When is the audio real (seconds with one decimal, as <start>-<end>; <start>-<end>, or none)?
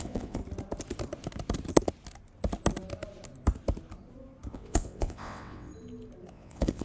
0.4-4.5; 5.7-6.3